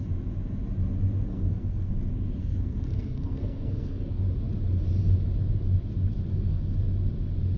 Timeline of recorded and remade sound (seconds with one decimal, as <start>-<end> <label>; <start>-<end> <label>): 0.0-1.3 recorded; 1.3-1.9 remade; 1.9-2.4 recorded; 2.4-4.2 remade; 4.2-6.3 recorded; 6.3-6.9 remade; 6.9-7.6 recorded